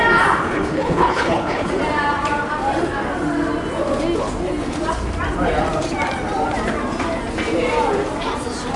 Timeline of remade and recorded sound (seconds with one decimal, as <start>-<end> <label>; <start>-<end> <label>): 0.0-0.4 recorded; 0.4-1.7 remade; 1.7-8.8 recorded